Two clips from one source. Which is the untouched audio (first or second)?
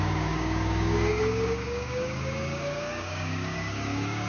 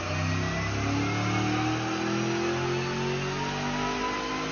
second